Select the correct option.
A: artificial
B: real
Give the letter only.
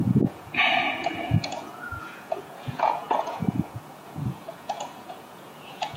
A